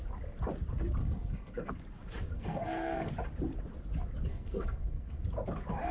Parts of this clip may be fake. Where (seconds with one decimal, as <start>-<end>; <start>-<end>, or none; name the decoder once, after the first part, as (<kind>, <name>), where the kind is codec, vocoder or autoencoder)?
1.0-1.7 (codec, SNAC); 2.3-3.1; 4.3-5.2